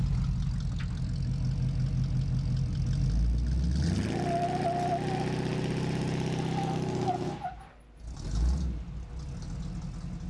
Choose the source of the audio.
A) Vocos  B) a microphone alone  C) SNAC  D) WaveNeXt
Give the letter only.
B